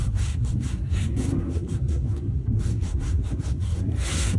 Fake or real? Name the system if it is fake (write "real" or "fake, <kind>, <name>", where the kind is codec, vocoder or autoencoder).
fake, codec, SNAC